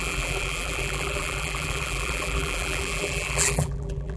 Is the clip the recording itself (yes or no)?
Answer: no